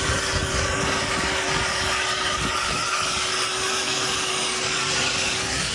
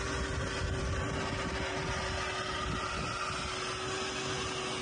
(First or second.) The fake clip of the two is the first